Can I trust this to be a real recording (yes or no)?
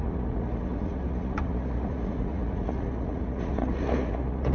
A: no